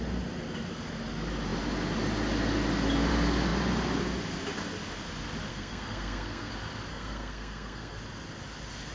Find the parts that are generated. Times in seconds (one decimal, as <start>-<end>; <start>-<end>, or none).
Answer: 5.5-6.5; 6.9-8.0